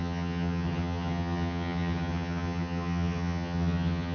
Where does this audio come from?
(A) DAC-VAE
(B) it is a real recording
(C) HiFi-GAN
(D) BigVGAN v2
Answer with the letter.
C